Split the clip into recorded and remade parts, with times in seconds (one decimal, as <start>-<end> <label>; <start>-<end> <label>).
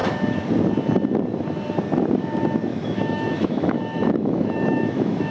0.0-2.7 recorded; 2.7-5.3 remade